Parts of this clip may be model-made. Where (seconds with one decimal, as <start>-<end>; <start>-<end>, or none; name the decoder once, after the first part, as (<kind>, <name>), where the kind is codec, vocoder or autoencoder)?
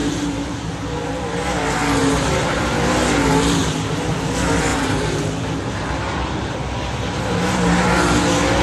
0.0-0.7 (vocoder, BigVGAN v2); 2.0-2.6; 3.6-4.1; 4.7-7.2